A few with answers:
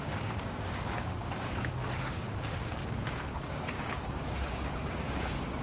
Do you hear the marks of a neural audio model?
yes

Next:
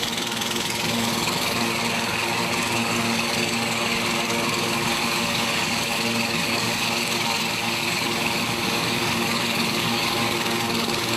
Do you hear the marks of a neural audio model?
yes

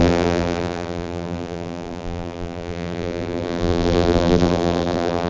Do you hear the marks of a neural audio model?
yes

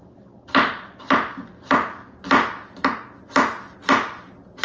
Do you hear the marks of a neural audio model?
no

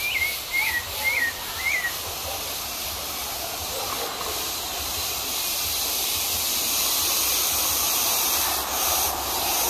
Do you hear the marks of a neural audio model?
yes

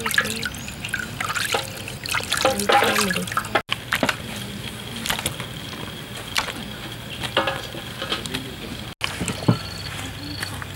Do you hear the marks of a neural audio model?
no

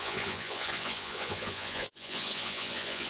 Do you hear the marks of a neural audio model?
yes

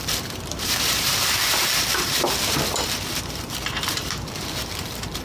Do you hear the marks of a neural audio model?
yes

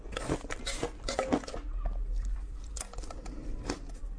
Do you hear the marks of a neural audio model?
no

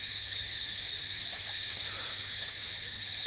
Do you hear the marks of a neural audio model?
yes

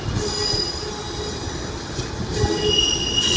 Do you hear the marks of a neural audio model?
no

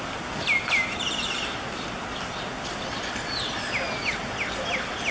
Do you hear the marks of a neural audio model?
no